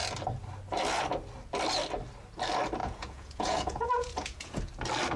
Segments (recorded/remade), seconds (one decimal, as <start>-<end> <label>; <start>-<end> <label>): 0.0-2.8 recorded; 2.8-4.6 remade; 4.6-5.2 recorded